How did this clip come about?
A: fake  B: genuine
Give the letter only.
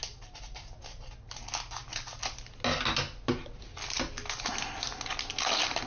B